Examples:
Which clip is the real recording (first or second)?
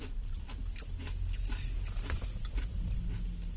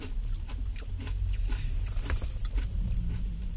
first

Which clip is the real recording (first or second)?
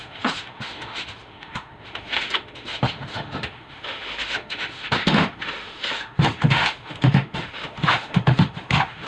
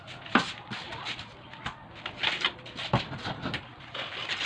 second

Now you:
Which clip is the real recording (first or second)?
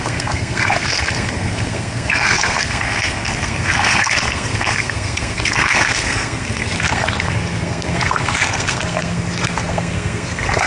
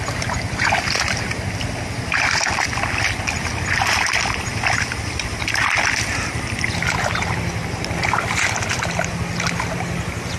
second